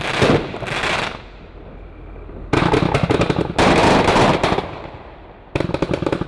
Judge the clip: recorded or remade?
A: recorded